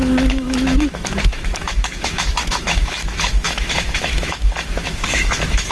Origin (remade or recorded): remade